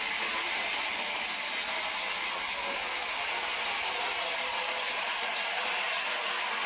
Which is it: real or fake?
real